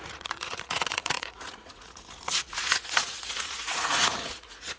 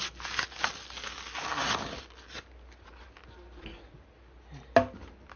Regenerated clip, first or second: first